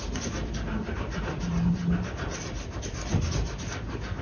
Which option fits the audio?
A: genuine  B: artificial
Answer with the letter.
A